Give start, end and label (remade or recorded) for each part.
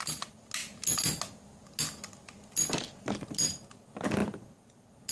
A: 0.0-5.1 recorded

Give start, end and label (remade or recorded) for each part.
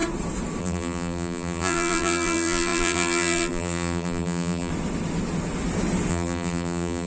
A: 0.0-0.6 recorded; 0.6-4.7 remade; 4.7-6.1 recorded; 6.1-7.1 remade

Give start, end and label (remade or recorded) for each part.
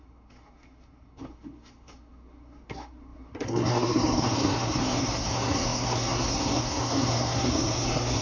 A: 0.0-8.2 remade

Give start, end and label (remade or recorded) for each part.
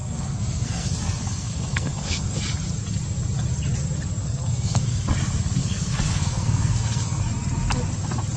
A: 0.0-2.4 remade; 2.4-4.2 recorded; 4.2-5.0 remade; 5.0-5.6 recorded; 5.6-7.2 remade; 7.2-8.4 recorded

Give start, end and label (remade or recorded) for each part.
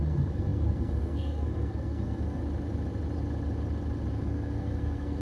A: 0.0-2.4 remade; 2.4-4.1 recorded; 4.1-5.2 remade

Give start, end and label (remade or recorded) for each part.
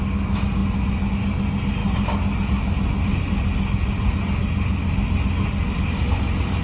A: 0.0-6.6 recorded